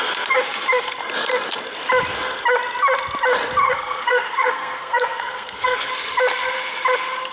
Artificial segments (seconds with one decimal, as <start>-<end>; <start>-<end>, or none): 3.6-5.9